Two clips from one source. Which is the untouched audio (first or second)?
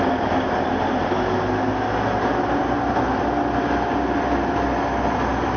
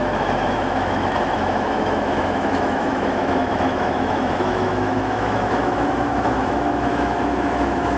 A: first